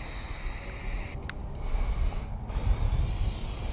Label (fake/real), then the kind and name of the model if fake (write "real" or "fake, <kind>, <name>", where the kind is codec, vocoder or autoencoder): real